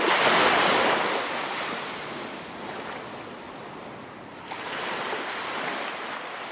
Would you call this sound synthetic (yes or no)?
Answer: no